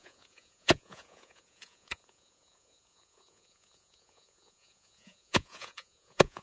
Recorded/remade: remade